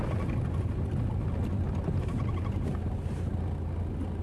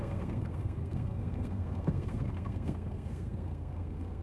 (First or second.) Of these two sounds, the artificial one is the second